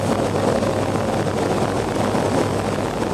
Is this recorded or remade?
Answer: recorded